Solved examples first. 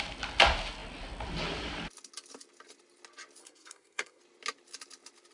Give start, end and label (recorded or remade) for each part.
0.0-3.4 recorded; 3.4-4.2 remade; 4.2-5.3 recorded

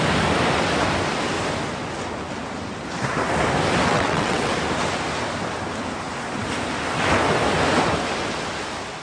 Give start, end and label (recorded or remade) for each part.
0.0-3.9 recorded; 3.9-4.5 remade; 4.5-9.0 recorded

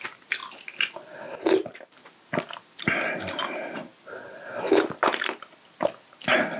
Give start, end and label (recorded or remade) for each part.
0.0-6.6 recorded

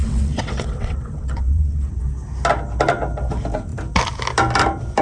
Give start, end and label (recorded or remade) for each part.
0.0-2.0 remade; 2.0-5.0 recorded

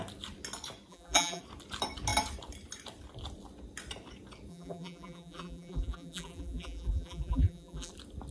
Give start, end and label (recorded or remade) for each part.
0.0-0.9 recorded; 0.9-1.4 remade; 1.4-4.5 recorded; 4.5-7.9 remade; 7.9-8.3 recorded

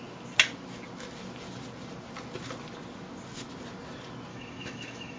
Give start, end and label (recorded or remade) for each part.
0.0-4.3 recorded; 4.3-5.2 remade

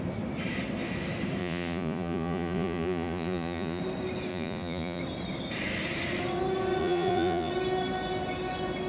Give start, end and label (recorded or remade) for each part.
0.0-1.4 recorded; 1.4-3.8 remade; 3.8-4.3 recorded; 4.3-5.0 remade; 5.0-6.8 recorded; 6.8-7.5 remade; 7.5-8.9 recorded